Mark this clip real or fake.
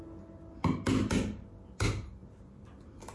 real